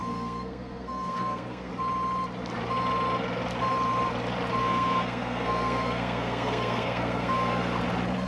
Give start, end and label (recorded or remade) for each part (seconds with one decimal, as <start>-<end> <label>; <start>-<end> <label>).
0.0-1.7 remade; 1.7-4.6 recorded; 4.6-7.8 remade; 7.8-8.3 recorded